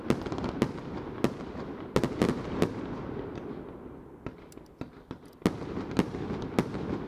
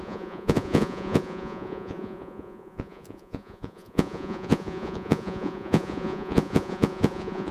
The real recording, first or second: first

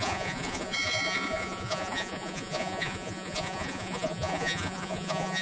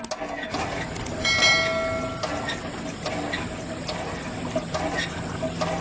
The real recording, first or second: second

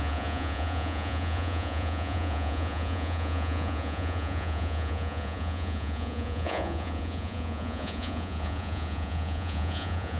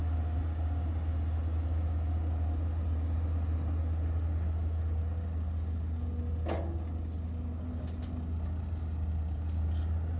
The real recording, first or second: second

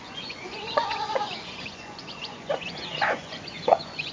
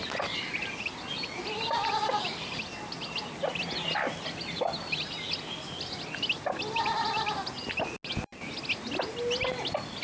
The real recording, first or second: second